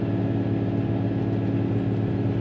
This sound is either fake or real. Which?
real